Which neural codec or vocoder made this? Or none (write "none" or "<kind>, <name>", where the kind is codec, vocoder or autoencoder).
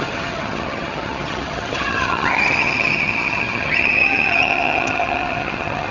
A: vocoder, HiFi-GAN